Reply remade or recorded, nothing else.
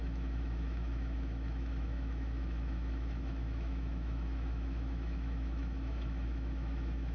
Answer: remade